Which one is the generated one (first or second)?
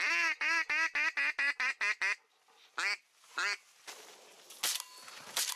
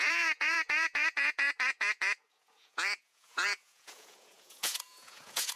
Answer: second